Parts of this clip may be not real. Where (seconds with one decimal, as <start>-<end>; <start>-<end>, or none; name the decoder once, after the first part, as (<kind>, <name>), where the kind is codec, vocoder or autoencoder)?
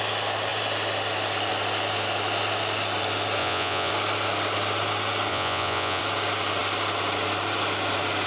3.4-3.9 (vocoder, Vocos); 5.3-6.0